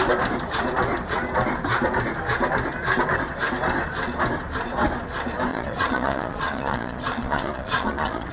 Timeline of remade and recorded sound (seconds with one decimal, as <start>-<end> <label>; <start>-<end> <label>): 0.0-5.5 recorded; 5.5-8.3 remade